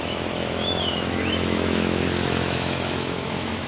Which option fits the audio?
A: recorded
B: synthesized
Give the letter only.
B